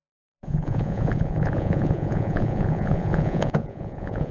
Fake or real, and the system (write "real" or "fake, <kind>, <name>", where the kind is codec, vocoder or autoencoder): fake, vocoder, Vocos